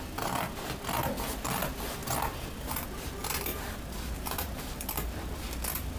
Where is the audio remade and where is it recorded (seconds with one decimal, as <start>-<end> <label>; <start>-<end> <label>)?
0.0-3.5 recorded; 3.5-5.4 remade; 5.4-6.0 recorded